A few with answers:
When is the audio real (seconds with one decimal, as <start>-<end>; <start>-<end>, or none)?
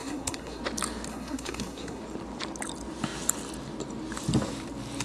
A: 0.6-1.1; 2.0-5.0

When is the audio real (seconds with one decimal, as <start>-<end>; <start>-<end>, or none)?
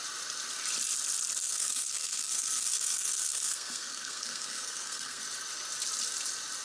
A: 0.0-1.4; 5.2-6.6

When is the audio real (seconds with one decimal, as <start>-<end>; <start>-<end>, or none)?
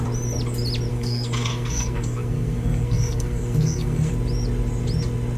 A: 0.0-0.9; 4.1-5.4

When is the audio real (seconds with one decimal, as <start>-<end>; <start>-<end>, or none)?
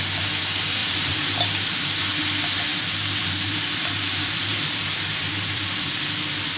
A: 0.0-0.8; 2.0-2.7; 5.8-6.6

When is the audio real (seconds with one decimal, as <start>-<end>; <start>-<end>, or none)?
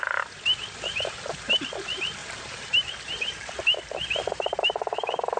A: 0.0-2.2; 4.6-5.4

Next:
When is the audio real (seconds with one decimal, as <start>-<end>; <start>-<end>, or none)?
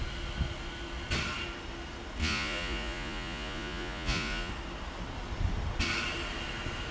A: 0.0-2.2; 4.5-6.9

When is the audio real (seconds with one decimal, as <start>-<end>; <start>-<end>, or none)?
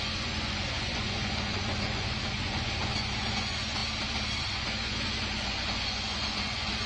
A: 3.8-4.4